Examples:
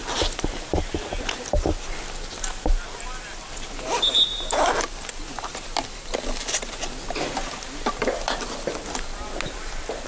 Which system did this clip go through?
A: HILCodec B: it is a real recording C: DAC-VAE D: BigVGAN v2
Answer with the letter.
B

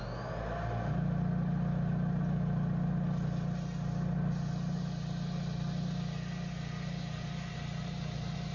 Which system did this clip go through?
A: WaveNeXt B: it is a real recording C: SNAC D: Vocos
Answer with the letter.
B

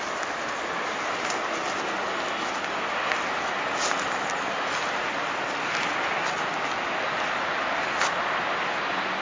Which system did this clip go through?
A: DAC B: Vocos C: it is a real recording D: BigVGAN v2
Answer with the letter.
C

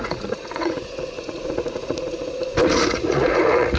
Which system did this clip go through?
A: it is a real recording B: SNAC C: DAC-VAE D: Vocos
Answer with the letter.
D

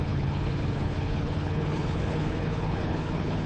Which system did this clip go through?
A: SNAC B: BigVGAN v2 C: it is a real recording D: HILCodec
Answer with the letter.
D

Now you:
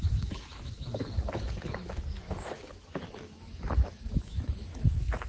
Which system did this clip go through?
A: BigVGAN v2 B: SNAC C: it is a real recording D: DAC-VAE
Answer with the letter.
D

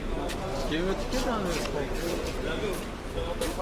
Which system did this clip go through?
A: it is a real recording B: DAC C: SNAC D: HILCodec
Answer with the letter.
A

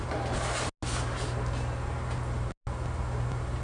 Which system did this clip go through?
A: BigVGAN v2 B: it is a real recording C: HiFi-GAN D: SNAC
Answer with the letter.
B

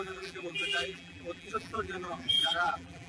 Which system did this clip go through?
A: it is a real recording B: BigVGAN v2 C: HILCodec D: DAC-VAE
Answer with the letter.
B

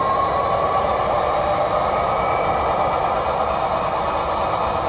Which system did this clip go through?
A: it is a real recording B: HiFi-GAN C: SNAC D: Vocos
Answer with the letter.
A